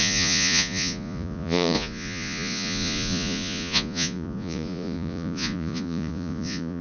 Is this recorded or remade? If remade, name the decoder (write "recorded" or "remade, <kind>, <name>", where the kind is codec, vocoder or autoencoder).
remade, vocoder, Vocos